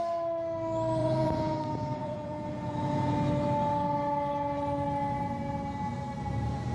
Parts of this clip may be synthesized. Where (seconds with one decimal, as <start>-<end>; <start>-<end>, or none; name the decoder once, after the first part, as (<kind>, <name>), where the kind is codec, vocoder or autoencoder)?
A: 1.0-1.6 (vocoder, Vocos); 2.0-3.1